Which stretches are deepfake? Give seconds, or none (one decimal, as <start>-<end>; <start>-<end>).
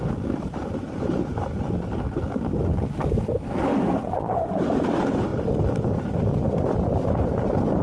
3.7-4.6